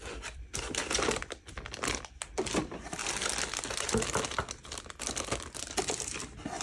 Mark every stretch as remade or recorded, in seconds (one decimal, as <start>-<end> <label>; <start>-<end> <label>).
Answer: 0.0-3.0 remade; 3.0-6.6 recorded